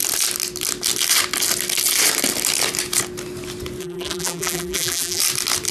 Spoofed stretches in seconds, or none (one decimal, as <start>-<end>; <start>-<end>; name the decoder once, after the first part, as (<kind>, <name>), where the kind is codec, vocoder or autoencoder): 3.8-5.2 (vocoder, BigVGAN v2)